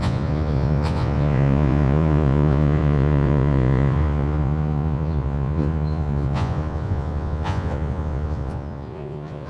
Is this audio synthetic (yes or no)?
yes